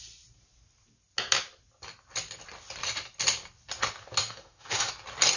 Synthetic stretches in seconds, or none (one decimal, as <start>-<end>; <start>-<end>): 4.2-4.9